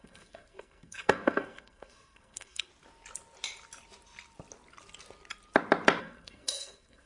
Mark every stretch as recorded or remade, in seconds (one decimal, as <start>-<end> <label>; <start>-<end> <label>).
0.0-2.7 remade; 2.7-6.0 recorded; 6.0-7.1 remade